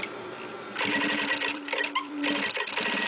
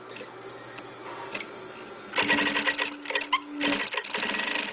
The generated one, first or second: first